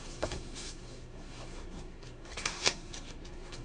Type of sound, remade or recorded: remade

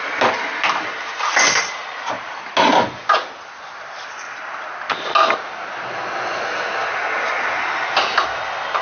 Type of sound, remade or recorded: recorded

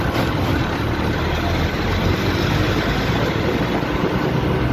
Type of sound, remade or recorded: recorded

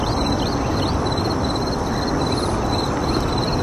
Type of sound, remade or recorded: recorded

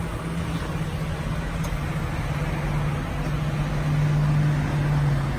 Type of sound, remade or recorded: recorded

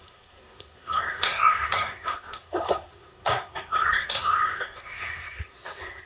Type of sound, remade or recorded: remade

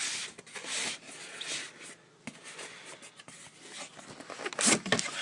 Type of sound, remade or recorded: recorded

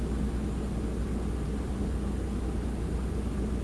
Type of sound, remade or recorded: recorded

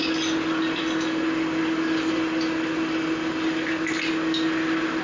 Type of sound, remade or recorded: recorded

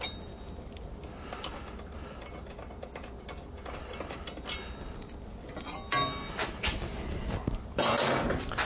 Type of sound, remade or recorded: recorded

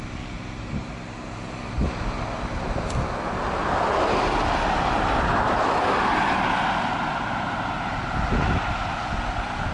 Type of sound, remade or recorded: recorded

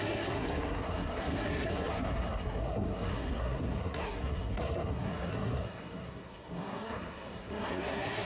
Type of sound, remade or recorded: remade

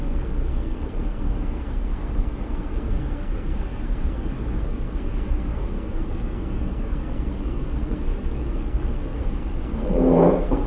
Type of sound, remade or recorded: remade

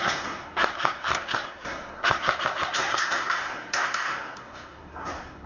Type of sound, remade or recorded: remade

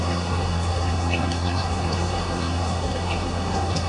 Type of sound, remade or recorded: remade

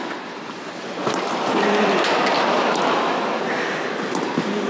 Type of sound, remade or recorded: recorded